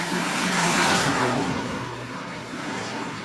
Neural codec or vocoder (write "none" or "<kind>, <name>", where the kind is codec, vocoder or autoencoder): codec, SNAC